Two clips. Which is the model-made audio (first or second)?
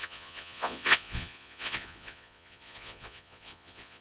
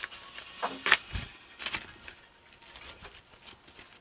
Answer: first